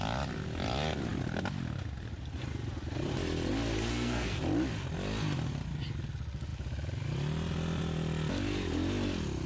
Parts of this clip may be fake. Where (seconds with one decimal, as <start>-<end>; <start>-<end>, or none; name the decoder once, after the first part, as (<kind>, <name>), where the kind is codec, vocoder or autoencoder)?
3.9-4.4 (codec, SNAC)